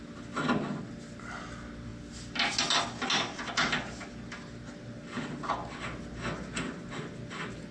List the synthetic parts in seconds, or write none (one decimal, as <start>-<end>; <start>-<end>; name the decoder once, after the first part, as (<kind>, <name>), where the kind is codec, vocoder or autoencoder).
none

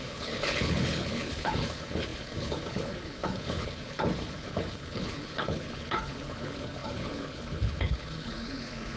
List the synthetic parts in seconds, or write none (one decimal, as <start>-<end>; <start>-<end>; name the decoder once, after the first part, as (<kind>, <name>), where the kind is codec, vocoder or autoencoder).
0.0-9.0 (codec, HILCodec)

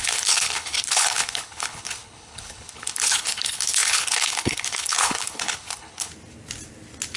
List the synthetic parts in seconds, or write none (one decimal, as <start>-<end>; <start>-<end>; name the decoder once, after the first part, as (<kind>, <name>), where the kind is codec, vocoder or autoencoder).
0.0-6.1 (codec, HILCodec)

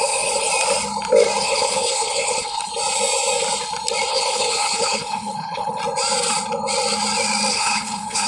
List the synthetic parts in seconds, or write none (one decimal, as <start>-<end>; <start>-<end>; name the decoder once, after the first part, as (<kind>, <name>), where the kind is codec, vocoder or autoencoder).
0.0-0.5 (codec, HILCodec); 1.4-2.7; 4.1-5.8; 7.5-8.3

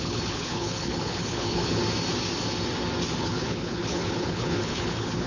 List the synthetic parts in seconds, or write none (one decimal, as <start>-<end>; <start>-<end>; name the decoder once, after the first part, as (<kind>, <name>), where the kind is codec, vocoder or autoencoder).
0.0-1.8 (codec, HILCodec); 3.2-5.3

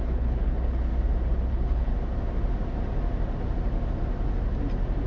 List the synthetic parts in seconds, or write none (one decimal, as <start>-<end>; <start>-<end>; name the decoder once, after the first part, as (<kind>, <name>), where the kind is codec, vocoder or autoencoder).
0.0-0.9 (codec, HILCodec); 1.5-1.9

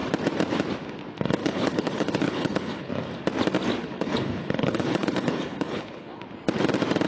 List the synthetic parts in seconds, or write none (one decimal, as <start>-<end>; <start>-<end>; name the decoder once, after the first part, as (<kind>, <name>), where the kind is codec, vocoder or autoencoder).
1.4-2.9 (codec, HILCodec); 3.8-6.2

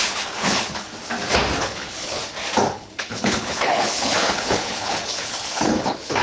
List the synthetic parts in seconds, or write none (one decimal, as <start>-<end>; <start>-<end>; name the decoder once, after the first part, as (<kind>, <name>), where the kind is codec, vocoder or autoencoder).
0.0-0.9 (codec, HILCodec); 1.6-2.2; 2.7-6.2